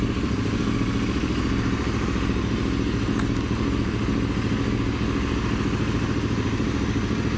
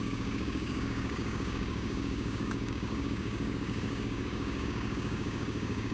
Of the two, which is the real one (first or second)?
first